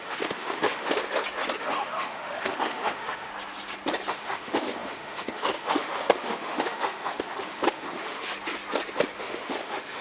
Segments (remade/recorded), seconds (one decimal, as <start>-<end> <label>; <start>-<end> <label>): 0.0-1.0 remade; 1.0-1.6 recorded; 1.6-3.3 remade; 3.3-4.1 recorded; 4.1-8.3 remade; 8.3-9.2 recorded; 9.2-10.0 remade